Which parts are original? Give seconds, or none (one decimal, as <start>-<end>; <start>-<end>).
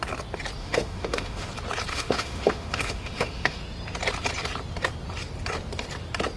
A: 0.0-0.6; 1.5-1.9; 3.6-6.4